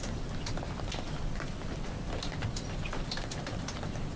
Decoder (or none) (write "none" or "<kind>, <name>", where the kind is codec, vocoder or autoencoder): vocoder, BigVGAN v2